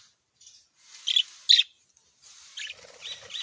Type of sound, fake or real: real